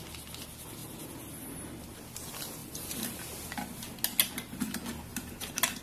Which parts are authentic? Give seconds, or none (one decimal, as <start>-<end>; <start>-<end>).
0.0-2.6; 3.2-5.1